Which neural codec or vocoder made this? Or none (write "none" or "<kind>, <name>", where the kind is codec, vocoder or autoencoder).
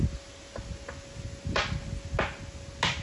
none